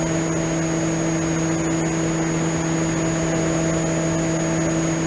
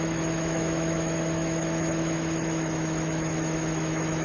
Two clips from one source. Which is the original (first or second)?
first